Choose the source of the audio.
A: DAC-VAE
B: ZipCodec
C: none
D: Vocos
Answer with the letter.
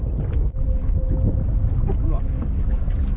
C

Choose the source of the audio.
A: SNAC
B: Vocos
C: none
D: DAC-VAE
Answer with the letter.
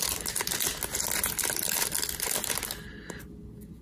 C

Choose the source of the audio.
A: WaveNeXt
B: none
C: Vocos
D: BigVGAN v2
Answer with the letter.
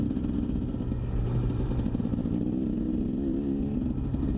B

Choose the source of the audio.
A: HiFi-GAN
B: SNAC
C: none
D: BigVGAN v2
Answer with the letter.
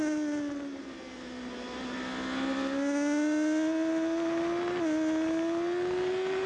C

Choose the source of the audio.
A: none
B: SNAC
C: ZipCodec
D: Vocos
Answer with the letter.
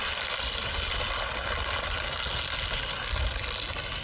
A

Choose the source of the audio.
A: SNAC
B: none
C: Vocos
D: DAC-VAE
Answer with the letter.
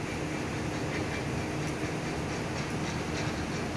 B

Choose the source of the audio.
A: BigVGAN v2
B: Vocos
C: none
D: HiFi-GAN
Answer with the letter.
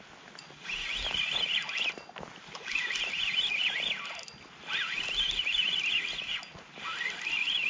C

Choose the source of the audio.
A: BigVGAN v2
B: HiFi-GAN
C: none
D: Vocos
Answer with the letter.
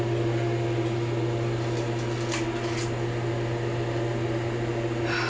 C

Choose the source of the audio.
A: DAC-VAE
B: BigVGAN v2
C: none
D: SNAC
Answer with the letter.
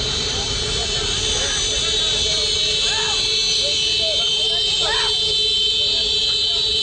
C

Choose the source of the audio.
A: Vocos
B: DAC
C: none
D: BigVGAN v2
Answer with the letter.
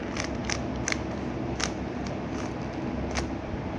C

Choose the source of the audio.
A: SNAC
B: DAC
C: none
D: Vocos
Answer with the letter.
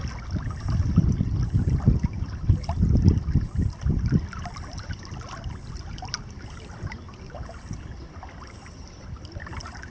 C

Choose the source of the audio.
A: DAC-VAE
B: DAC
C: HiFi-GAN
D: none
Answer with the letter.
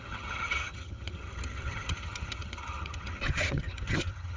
C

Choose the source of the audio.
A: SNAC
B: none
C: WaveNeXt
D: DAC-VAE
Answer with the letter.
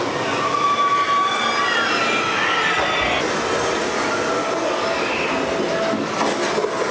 B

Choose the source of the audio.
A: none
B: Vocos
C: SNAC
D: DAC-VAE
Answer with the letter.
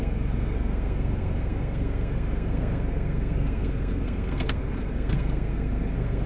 C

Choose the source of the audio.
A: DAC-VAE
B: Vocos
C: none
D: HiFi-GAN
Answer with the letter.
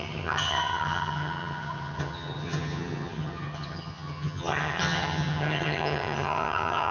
D